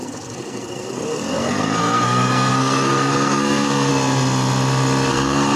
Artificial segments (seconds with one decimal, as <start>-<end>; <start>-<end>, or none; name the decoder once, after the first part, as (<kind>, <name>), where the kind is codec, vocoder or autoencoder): 0.0-3.9 (codec, SNAC); 5.1-5.6